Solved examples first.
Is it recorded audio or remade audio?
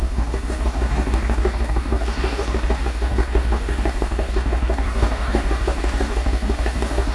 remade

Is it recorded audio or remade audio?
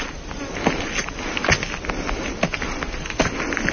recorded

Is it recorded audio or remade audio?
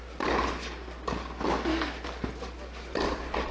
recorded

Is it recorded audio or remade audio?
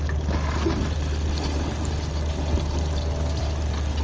recorded